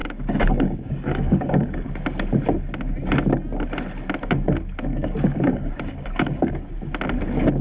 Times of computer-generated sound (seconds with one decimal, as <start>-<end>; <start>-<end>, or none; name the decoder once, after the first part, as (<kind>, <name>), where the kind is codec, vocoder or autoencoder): 0.0-1.9 (codec, DAC); 4.9-6.5